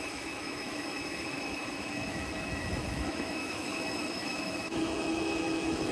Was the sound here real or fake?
fake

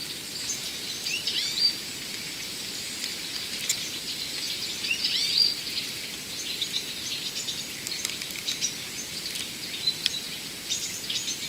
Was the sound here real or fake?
real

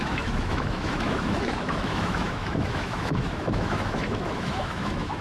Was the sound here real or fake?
fake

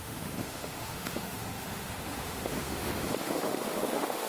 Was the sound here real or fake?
fake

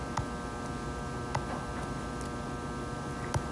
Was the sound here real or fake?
real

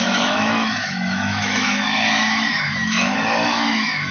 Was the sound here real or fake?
fake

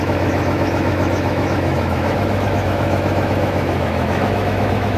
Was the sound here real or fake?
fake